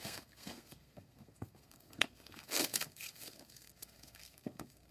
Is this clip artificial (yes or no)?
yes